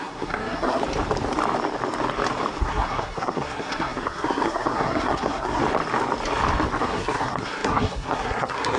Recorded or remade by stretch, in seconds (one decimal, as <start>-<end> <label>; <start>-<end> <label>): 0.0-0.8 remade; 0.8-2.6 recorded; 2.6-5.6 remade; 5.6-6.8 recorded; 6.8-8.8 remade